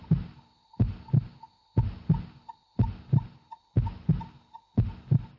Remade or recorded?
recorded